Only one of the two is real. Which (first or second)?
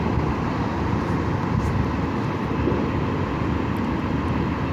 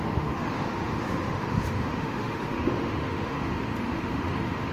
first